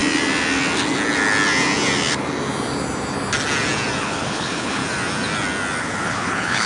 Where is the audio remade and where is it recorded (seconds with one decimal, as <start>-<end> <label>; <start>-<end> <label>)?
0.0-4.0 recorded; 4.0-4.8 remade; 4.8-5.8 recorded; 5.8-6.7 remade